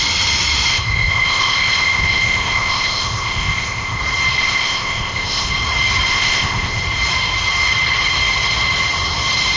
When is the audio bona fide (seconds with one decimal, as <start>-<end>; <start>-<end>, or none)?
0.0-0.7; 4.0-4.4; 5.5-6.1; 6.8-9.6